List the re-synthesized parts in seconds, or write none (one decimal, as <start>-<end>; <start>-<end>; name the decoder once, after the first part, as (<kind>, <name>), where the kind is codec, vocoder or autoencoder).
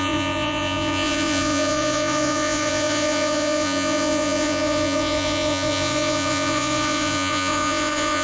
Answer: 0.0-8.2 (vocoder, Vocos)